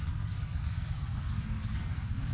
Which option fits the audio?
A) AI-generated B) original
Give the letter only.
A